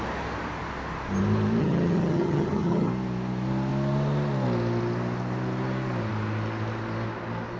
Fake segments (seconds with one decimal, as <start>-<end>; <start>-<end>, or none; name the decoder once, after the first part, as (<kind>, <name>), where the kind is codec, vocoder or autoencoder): 1.6-2.9 (vocoder, HiFi-GAN)